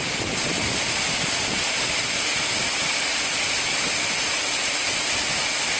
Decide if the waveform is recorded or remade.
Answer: recorded